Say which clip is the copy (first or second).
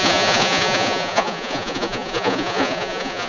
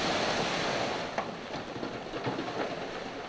first